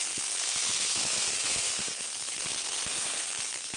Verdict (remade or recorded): remade